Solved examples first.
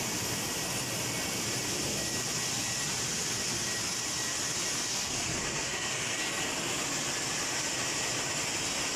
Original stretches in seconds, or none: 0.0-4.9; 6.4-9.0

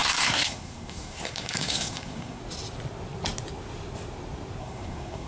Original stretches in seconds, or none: 2.4-4.6

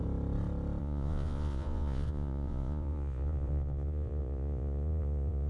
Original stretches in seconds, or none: 0.0-0.8